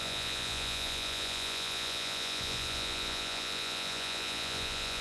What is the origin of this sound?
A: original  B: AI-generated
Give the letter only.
B